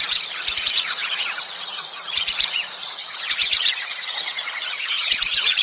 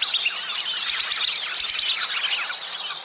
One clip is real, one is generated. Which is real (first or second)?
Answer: second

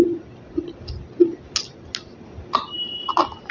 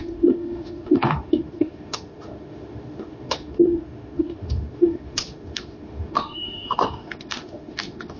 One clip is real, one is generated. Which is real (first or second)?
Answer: first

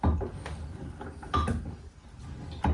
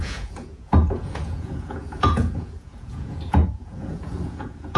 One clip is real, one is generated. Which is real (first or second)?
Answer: first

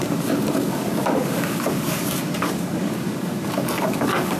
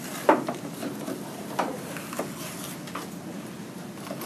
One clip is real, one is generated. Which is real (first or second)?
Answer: second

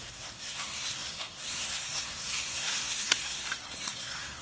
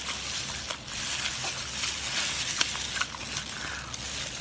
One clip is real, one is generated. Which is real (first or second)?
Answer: second